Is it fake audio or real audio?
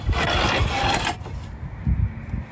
real